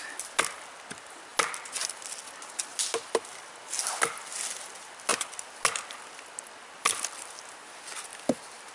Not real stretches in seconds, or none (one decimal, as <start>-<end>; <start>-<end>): none